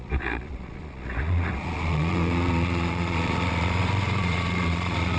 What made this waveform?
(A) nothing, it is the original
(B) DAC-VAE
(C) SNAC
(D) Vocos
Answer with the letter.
D